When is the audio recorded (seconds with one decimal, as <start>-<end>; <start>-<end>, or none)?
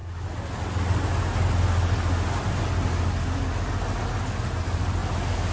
0.0-5.5